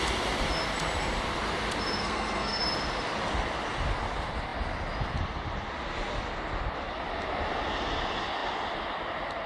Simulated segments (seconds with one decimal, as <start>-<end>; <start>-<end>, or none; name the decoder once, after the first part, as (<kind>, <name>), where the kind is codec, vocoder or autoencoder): 2.0-2.6 (codec, SNAC)